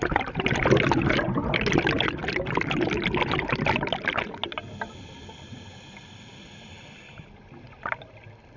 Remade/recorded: recorded